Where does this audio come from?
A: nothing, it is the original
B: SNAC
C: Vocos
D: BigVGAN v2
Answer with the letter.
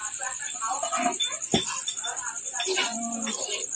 A